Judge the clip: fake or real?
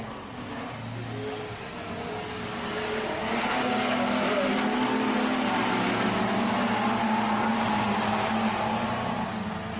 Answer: real